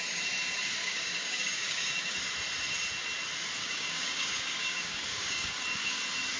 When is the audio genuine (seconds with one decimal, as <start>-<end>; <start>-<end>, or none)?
0.0-0.8; 2.2-3.6; 6.0-6.4